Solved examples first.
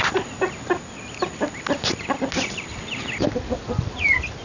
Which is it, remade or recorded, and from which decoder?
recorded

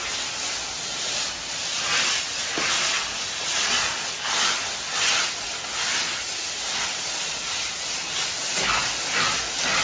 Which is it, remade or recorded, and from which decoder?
recorded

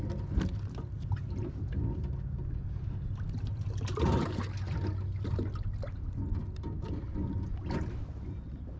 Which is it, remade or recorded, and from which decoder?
recorded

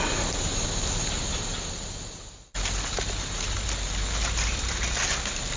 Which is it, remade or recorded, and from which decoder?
recorded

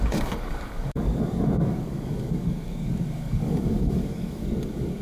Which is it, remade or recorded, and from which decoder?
remade, codec, DAC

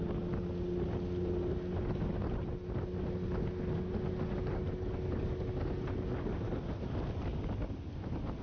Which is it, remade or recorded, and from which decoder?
recorded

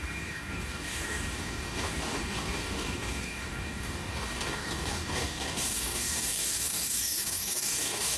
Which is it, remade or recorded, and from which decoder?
remade, codec, DAC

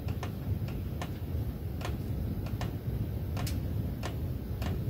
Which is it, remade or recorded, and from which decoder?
recorded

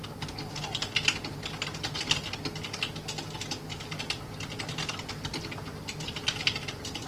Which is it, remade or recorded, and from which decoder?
recorded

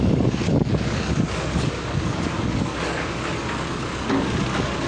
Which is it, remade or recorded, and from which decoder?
remade, codec, DAC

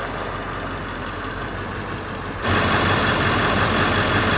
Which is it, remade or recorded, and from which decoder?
recorded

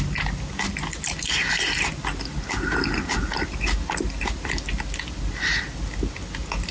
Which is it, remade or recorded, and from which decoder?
recorded